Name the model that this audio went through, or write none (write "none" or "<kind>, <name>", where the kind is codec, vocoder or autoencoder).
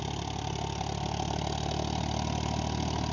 none